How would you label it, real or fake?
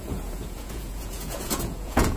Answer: fake